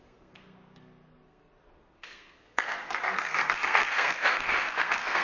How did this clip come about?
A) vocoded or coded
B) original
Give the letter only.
A